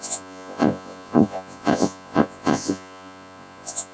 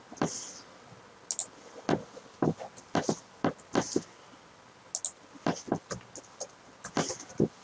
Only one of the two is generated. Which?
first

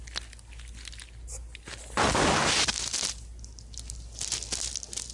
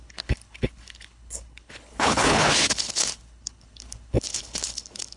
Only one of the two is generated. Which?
second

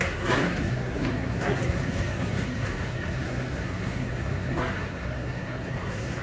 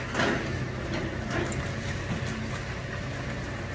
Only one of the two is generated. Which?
first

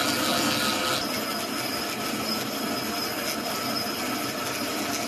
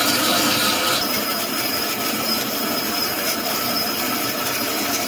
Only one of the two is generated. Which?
second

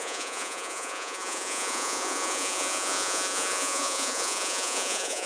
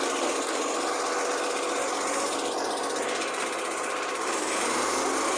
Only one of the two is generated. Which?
first